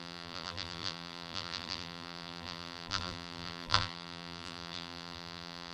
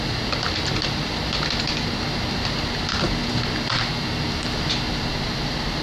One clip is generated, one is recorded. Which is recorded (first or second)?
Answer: second